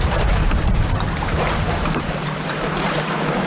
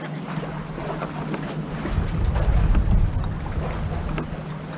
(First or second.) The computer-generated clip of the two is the first